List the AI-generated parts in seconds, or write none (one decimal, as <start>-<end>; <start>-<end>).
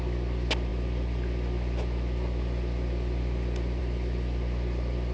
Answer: none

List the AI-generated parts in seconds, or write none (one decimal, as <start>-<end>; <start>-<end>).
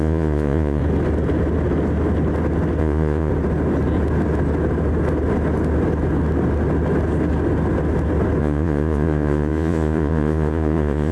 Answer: 0.0-0.8; 2.8-3.3; 8.4-11.1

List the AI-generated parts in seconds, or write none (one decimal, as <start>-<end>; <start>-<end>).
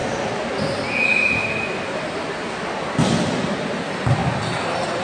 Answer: none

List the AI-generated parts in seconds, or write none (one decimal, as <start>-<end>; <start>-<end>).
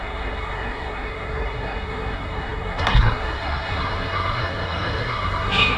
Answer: 0.0-5.8